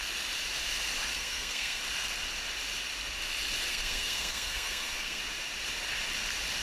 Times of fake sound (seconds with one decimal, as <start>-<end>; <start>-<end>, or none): 1.1-1.8; 3.7-5.2